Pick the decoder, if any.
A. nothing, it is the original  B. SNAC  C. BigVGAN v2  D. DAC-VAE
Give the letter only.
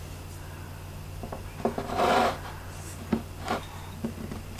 A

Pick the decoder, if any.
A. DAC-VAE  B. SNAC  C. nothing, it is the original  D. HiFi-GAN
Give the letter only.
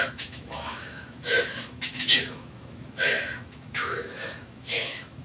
A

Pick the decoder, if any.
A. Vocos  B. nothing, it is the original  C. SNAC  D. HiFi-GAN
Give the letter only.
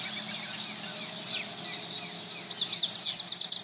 B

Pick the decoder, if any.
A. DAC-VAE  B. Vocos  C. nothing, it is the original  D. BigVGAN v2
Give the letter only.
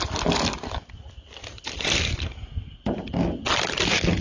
C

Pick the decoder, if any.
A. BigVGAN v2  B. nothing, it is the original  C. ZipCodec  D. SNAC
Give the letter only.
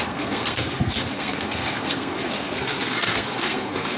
D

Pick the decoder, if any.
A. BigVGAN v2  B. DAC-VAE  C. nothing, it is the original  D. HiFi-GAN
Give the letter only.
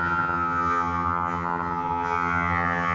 D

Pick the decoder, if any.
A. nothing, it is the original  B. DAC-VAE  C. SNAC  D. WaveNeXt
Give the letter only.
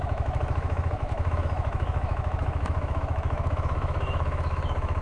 B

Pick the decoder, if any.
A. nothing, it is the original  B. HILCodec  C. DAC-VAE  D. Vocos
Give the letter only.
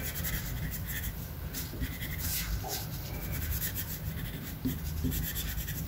A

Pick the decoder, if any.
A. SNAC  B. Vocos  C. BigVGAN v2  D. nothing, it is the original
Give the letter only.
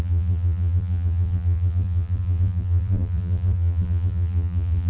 C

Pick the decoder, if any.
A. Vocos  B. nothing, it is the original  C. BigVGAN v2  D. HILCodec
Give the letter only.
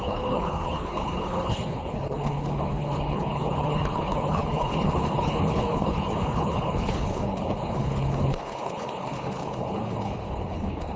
D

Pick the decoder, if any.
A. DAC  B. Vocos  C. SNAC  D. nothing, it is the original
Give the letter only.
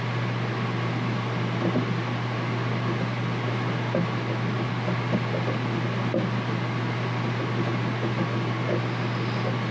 D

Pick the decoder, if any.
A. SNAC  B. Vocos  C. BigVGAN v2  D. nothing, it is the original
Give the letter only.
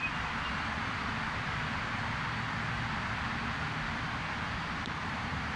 D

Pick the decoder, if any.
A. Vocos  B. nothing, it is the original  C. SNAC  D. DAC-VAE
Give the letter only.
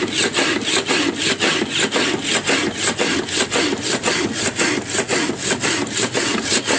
B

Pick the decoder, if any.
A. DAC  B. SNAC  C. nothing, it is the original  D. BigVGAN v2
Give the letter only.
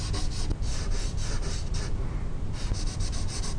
C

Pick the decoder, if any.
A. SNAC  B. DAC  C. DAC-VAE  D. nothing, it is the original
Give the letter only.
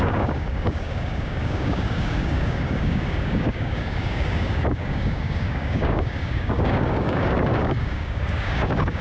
B